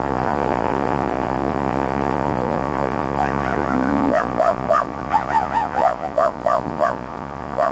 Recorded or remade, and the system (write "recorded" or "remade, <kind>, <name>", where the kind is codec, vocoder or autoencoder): remade, vocoder, Vocos